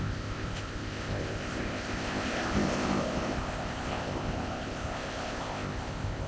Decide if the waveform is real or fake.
fake